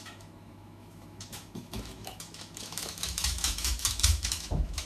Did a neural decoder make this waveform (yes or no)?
yes